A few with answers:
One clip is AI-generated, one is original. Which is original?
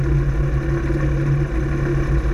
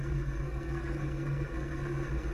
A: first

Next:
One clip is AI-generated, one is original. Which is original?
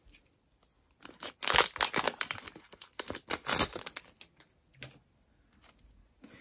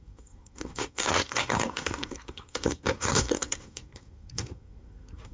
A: first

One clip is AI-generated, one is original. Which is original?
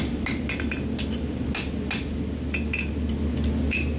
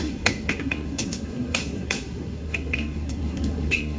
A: first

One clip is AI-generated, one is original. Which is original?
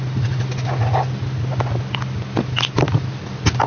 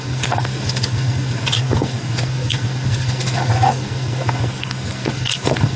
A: first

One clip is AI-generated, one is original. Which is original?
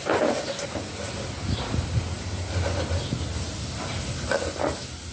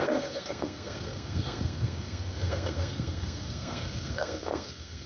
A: first